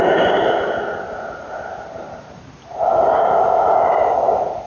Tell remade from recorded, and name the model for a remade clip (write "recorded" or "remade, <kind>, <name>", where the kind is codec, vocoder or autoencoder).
recorded